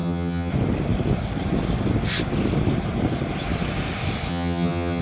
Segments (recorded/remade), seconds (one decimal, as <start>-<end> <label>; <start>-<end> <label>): 0.0-0.5 remade; 0.5-4.3 recorded; 4.3-5.0 remade